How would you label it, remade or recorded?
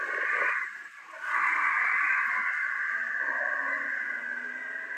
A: recorded